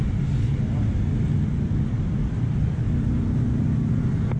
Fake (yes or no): yes